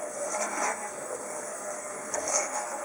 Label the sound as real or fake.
fake